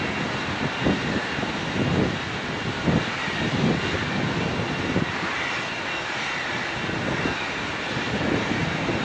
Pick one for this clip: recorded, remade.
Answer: recorded